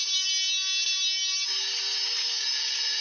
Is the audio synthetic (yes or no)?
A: no